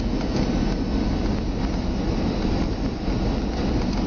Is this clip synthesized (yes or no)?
no